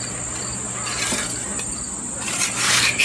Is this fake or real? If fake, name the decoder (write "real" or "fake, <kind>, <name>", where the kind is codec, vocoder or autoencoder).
real